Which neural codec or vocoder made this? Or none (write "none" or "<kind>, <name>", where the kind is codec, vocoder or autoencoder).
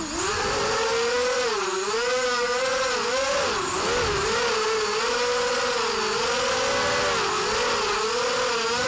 none